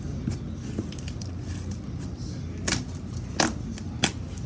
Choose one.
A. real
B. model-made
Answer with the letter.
A